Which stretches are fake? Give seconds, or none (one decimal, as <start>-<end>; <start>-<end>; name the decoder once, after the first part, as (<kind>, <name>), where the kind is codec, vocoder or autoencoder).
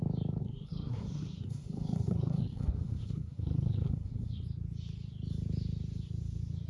0.4-4.4 (codec, SNAC)